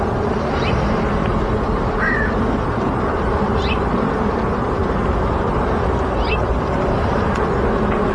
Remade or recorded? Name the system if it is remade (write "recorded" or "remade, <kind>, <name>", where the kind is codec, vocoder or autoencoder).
remade, vocoder, BigVGAN v2